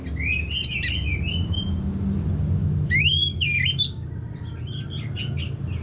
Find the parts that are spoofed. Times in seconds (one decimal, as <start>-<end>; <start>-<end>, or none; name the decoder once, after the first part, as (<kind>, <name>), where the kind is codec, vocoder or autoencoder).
2.6-3.5 (autoencoder, DAC-VAE)